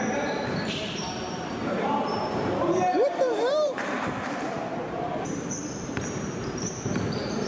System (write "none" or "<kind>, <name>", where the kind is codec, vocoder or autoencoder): vocoder, BigVGAN v2